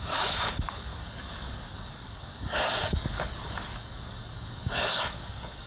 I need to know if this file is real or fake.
fake